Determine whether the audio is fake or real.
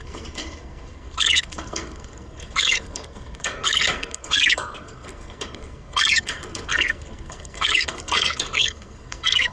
fake